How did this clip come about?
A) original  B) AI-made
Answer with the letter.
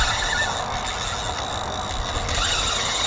A